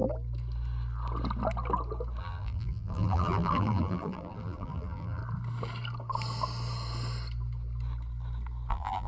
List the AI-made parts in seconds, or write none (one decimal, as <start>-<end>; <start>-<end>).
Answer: 2.2-5.2; 8.7-9.1